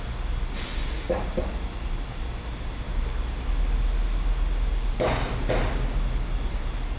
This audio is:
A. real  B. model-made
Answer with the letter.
A